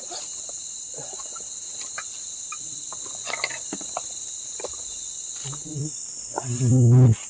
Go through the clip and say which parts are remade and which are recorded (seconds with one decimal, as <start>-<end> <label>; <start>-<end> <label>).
0.0-1.7 recorded; 1.7-6.1 remade; 6.1-7.3 recorded